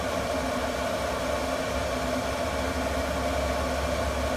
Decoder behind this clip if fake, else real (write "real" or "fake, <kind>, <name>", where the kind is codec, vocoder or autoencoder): real